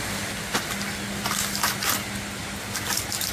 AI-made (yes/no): no